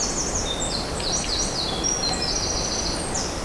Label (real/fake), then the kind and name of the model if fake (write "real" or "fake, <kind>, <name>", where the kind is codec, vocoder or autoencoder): real